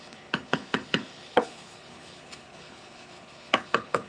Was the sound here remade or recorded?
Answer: remade